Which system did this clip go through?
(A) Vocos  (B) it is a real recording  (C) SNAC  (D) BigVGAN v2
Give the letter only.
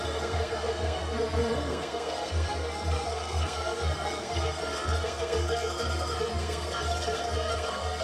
C